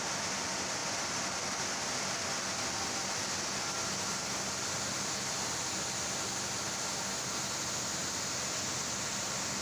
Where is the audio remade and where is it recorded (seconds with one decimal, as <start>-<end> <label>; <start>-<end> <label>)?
0.0-9.6 recorded